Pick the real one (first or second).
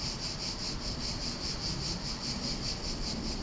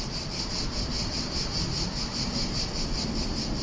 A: first